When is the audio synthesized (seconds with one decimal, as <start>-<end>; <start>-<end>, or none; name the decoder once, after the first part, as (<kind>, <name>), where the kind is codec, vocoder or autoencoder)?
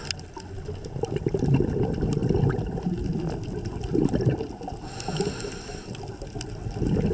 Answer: none